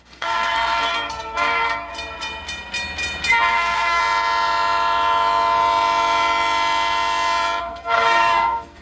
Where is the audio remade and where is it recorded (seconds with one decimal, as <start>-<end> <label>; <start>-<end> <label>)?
0.0-1.9 remade; 1.9-3.5 recorded; 3.5-4.0 remade; 4.0-7.6 recorded; 7.6-8.8 remade